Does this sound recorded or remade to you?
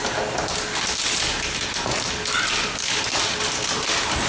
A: recorded